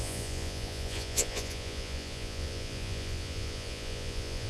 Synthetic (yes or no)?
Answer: yes